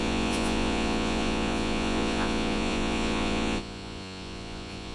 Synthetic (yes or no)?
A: yes